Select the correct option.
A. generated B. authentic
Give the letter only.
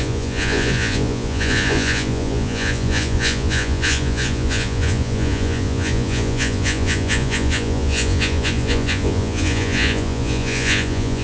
A